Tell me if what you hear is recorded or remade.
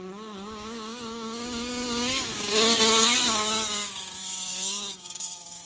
remade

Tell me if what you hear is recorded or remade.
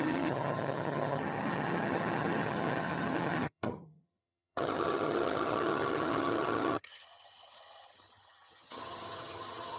remade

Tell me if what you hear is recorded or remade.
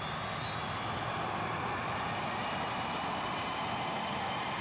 recorded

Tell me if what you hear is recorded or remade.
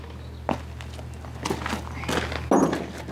recorded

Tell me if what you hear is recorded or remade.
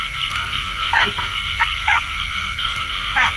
remade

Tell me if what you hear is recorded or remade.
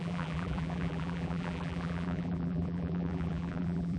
remade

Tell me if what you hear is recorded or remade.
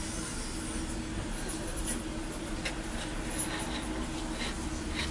recorded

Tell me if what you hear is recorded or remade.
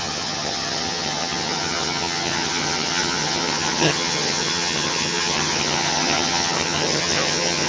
remade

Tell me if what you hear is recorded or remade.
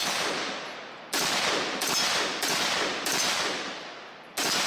recorded